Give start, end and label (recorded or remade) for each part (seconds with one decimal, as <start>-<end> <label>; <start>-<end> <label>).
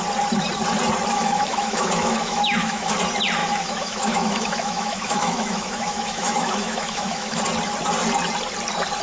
0.0-1.1 recorded; 1.1-2.9 remade; 2.9-3.4 recorded; 3.4-7.4 remade; 7.4-9.0 recorded